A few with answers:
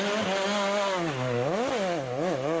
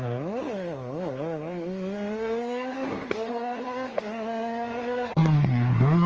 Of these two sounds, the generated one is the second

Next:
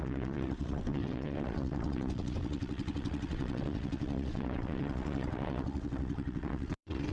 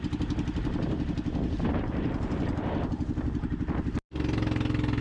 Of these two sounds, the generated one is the first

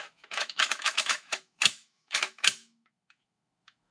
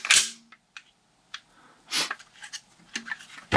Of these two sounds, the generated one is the first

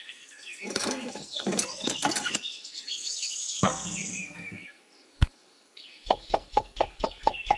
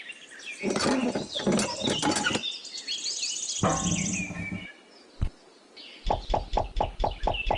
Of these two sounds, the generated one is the first